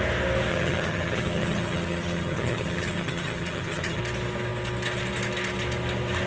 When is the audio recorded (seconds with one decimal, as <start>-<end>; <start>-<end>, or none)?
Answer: 0.0-0.5; 4.0-6.3